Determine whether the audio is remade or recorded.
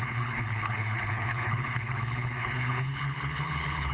remade